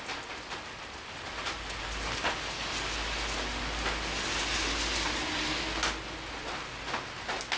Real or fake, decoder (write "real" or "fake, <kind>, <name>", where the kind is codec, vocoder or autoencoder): real